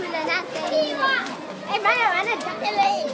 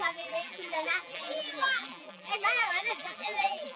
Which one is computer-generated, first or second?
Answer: second